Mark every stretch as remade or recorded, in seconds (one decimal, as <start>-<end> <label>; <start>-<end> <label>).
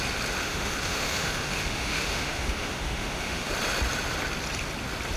0.0-0.4 recorded; 0.4-3.5 remade; 3.5-5.2 recorded